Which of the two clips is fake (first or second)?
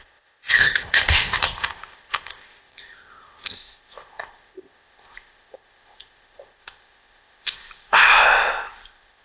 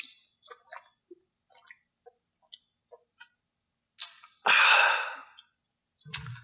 first